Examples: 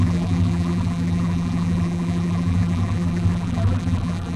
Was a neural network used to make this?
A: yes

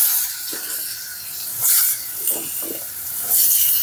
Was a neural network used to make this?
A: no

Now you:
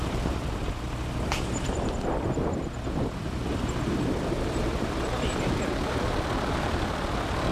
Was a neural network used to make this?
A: yes